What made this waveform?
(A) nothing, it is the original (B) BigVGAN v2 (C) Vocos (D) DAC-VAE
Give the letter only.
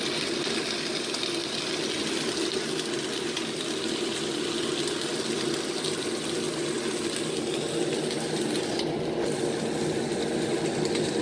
A